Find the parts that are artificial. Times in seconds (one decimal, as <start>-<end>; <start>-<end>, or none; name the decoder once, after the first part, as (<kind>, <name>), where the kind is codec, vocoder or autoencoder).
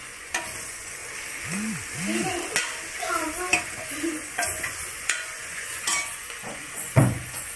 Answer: 0.0-1.0 (vocoder, Vocos); 3.6-7.6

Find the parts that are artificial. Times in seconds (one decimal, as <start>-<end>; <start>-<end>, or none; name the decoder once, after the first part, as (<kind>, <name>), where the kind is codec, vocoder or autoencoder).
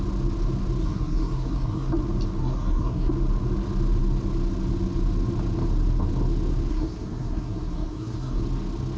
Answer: 0.8-1.9 (codec, SNAC); 2.4-3.1; 6.7-8.4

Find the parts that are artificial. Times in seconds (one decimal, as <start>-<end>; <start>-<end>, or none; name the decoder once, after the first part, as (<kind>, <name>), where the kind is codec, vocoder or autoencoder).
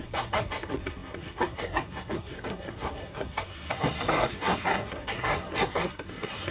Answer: 0.0-6.5 (codec, SNAC)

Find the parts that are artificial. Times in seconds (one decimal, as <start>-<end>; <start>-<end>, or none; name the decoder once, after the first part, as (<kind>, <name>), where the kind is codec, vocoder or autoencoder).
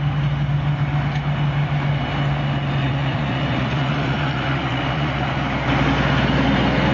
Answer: 2.8-5.3 (vocoder, Vocos)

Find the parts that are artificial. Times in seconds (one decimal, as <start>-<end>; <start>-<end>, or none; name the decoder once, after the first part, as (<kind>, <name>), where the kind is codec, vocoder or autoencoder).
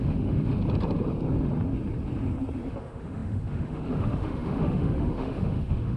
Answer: 0.0-0.6 (autoencoder, DAC-VAE); 2.7-6.0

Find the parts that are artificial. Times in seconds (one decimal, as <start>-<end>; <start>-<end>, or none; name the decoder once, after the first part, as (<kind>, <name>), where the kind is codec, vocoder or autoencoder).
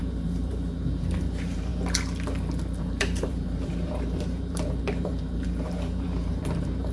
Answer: 0.0-1.7 (vocoder, BigVGAN v2); 2.8-6.9